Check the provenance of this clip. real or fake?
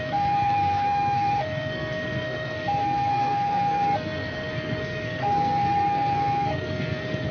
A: fake